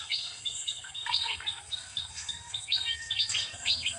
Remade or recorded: remade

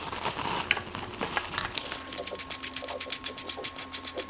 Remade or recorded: recorded